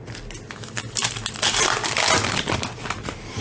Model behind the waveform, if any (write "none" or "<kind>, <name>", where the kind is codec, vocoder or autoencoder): none